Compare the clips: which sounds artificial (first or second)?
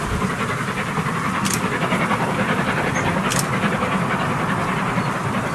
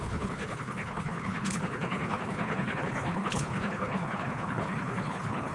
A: second